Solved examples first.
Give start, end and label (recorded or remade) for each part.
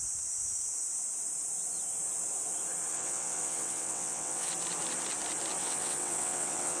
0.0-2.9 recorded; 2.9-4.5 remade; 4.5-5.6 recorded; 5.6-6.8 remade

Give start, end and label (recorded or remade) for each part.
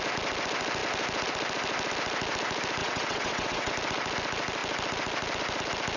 0.0-2.8 recorded; 2.8-3.7 remade; 3.7-6.0 recorded